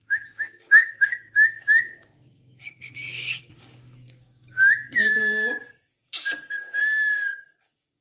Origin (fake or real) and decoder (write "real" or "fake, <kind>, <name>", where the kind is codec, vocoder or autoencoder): fake, codec, DAC